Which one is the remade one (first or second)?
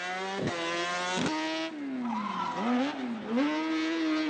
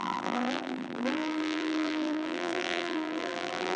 second